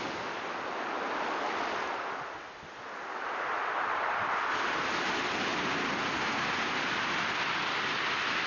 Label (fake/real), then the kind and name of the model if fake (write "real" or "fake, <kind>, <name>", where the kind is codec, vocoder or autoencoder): real